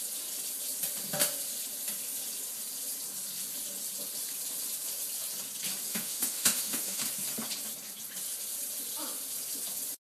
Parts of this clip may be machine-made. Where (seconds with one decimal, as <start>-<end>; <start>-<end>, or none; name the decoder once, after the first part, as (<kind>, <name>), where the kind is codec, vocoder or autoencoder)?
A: 5.9-7.0 (autoencoder, DAC-VAE)